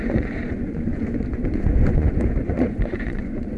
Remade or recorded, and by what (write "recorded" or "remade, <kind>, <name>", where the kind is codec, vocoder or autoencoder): remade, vocoder, Vocos